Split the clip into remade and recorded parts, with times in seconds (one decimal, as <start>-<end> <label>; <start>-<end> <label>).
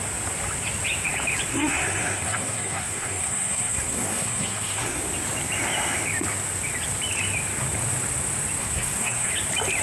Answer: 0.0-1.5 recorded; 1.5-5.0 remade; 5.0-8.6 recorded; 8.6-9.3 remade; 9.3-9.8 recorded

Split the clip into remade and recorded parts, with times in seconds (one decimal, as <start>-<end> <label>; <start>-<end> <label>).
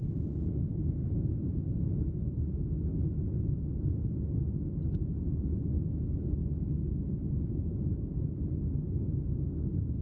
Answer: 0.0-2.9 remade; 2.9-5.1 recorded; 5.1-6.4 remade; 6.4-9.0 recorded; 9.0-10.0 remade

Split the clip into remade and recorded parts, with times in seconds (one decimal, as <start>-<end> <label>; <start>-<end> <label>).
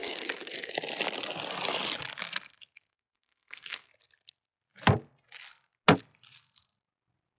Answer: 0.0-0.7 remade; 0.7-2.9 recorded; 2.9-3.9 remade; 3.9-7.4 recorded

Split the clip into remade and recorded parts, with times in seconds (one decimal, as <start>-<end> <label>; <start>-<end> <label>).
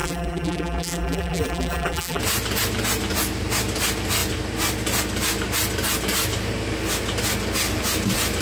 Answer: 0.0-2.2 remade; 2.2-8.4 recorded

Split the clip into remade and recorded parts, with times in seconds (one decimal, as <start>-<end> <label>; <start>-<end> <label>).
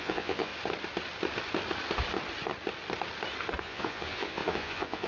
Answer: 0.0-0.5 remade; 0.5-3.6 recorded; 3.6-5.1 remade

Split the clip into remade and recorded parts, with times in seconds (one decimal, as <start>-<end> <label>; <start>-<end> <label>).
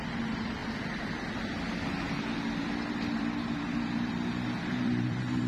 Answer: 0.0-0.6 remade; 0.6-2.9 recorded; 2.9-5.5 remade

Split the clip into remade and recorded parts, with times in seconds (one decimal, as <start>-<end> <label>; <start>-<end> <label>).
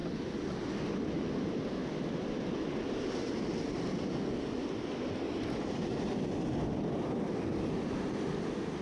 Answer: 0.0-8.8 recorded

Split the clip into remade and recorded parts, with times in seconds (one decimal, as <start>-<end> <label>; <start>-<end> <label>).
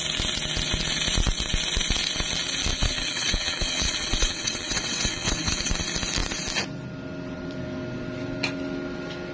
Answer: 0.0-2.7 recorded; 2.7-5.7 remade; 5.7-9.3 recorded